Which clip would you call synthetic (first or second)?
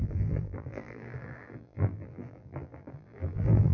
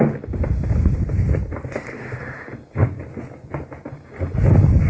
first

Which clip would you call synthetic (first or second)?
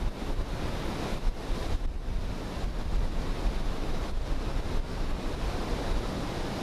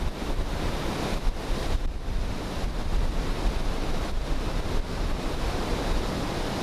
second